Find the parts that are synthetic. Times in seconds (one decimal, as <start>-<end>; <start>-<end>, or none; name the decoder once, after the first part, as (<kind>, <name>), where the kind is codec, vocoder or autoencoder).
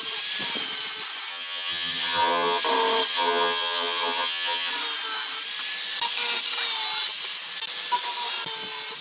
1.3-2.6 (vocoder, HiFi-GAN); 3.1-4.7